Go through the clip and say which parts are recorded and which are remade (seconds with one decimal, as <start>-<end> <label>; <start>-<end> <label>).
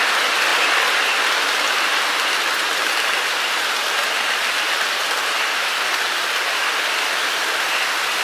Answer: 0.0-8.2 recorded